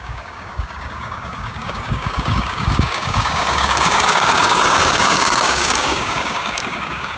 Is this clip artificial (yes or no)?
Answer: yes